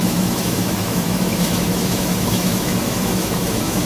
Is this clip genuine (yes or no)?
no